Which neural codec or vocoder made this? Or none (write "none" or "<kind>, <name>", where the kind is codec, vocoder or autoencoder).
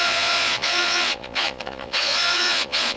vocoder, Vocos